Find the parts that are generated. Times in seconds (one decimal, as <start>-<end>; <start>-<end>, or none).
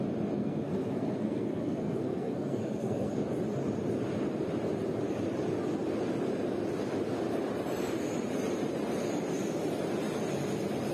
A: 0.4-3.2